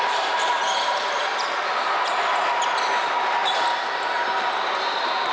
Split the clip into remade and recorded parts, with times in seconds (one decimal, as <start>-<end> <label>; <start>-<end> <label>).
0.0-5.3 recorded